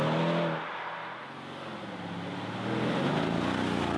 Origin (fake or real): real